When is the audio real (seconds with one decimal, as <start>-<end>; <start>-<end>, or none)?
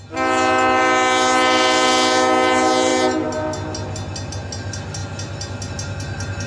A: 0.0-6.5